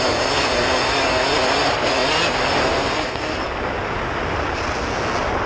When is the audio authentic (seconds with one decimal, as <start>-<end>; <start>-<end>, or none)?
0.0-5.5